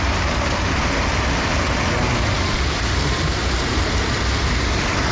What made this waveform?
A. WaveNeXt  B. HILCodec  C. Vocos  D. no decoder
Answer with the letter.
D